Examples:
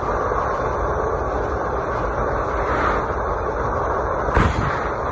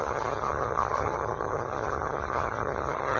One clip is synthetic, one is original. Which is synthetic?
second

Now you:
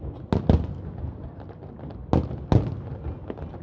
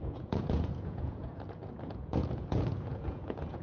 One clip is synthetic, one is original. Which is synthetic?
second